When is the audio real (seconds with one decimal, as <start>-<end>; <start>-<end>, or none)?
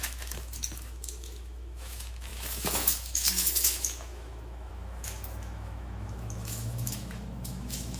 none